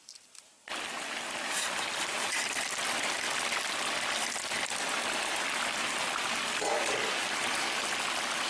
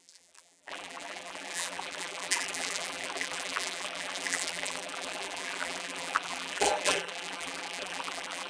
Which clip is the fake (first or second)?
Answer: second